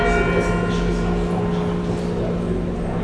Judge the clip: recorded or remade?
recorded